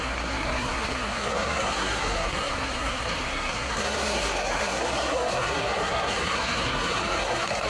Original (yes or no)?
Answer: no